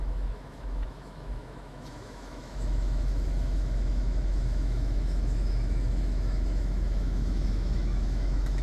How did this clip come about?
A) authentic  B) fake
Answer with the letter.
B